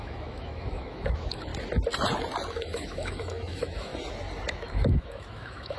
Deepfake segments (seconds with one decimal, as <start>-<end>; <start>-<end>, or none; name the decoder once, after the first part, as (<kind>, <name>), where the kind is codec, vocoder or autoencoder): 0.0-1.5 (autoencoder, DAC-VAE); 2.5-3.9; 4.5-5.8